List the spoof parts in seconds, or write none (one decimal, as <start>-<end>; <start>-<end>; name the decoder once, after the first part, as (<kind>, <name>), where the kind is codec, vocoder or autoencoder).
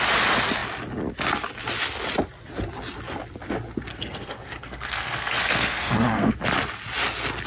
3.9-6.3 (codec, SNAC)